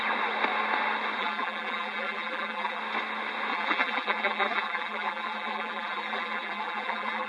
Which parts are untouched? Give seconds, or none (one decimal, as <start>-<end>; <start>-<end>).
0.0-1.2; 2.8-3.5